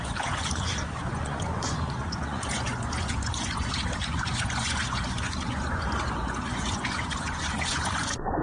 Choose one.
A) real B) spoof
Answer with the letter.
B